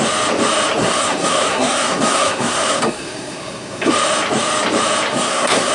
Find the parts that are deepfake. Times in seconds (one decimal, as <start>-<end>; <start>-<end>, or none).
0.8-3.9; 5.1-5.7